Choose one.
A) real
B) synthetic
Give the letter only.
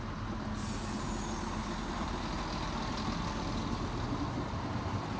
A